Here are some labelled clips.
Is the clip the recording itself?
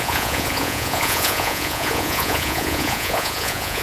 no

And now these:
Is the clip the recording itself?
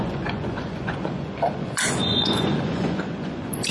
no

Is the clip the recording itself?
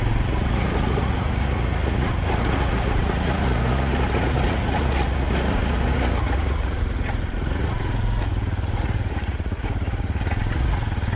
no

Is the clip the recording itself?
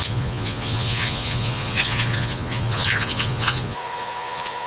no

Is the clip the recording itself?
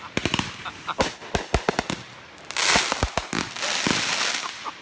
yes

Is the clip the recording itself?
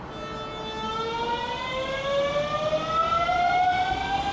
yes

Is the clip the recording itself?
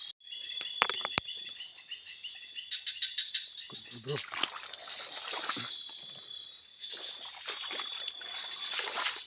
yes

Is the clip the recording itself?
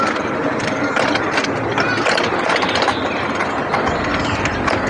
yes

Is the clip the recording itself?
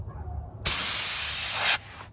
yes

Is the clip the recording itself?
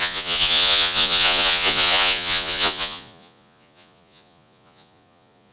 no